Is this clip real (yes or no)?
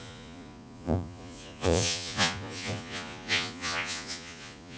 no